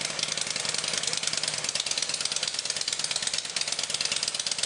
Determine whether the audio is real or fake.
real